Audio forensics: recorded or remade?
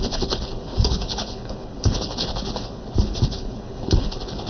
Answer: remade